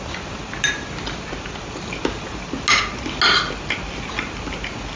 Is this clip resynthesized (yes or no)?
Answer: no